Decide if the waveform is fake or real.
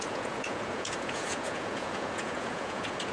fake